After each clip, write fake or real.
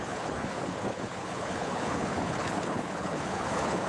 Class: fake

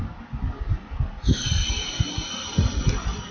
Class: real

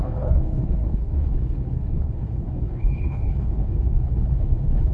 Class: fake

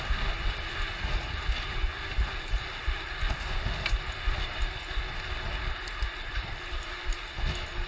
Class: real